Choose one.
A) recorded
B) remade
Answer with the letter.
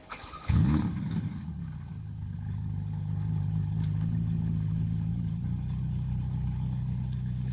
B